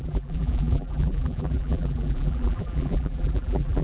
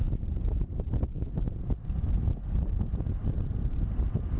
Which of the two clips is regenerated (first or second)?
first